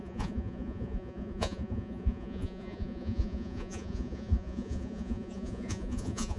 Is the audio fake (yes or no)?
yes